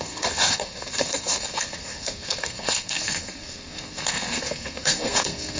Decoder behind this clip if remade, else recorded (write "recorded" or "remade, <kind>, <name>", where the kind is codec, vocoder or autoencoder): remade, codec, SNAC